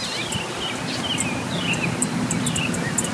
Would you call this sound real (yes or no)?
yes